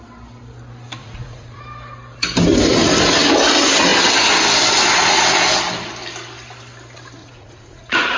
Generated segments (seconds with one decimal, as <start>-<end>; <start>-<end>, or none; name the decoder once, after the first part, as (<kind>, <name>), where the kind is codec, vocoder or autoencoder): 1.0-1.6 (vocoder, Vocos); 7.2-8.2